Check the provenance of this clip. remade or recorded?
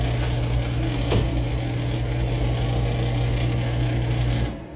recorded